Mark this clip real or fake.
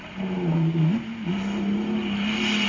real